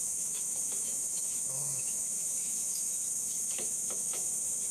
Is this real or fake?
fake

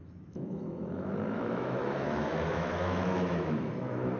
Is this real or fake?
fake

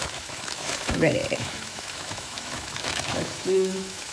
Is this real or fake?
fake